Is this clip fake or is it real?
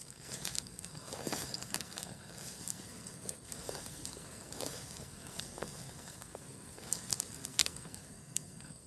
fake